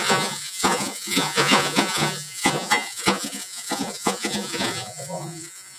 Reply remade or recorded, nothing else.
remade